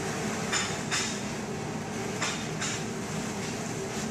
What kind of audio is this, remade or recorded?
recorded